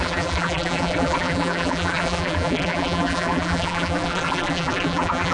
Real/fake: fake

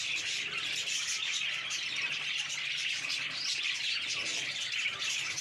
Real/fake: real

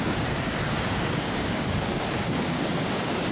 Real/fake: fake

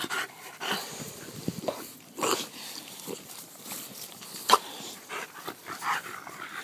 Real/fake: fake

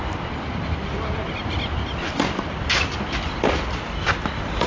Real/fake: real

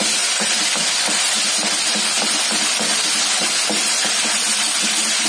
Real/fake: real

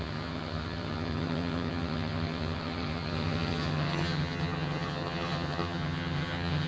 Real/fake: fake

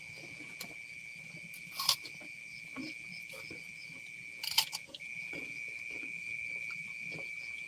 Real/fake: real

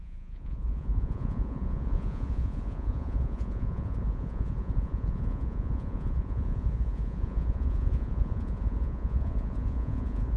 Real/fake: fake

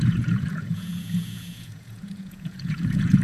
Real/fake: fake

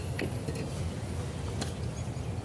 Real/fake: real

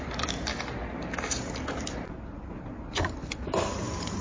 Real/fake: real